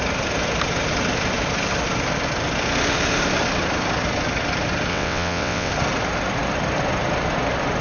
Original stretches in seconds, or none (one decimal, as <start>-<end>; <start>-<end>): 0.0-4.9; 5.7-7.8